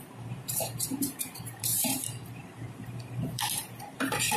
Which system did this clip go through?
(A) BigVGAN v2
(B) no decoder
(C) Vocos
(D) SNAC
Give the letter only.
A